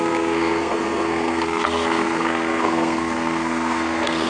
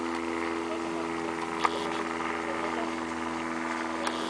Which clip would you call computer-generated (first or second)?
first